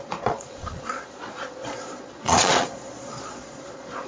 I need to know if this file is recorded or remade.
remade